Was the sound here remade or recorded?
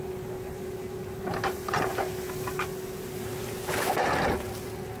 recorded